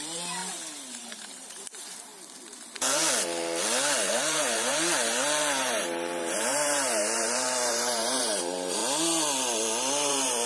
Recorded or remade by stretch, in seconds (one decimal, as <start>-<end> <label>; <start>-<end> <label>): 0.0-2.1 remade; 2.1-4.1 recorded; 4.1-8.8 remade; 8.8-10.1 recorded; 10.1-10.5 remade